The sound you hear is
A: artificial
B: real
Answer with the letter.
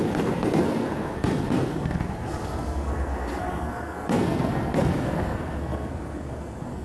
A